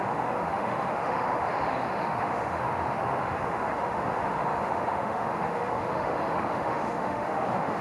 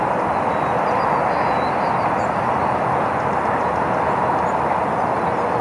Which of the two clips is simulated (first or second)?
first